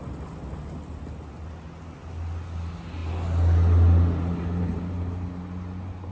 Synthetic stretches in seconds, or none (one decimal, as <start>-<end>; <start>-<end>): none